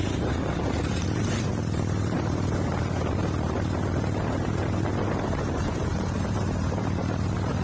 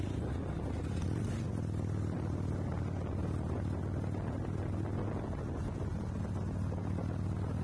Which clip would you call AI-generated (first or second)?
first